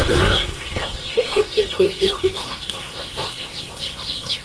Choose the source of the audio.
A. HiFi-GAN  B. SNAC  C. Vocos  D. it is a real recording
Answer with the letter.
B